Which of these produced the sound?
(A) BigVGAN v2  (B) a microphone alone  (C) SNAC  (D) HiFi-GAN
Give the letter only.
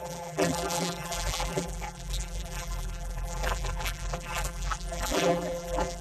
A